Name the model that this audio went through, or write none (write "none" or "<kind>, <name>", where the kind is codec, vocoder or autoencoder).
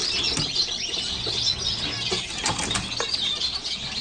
none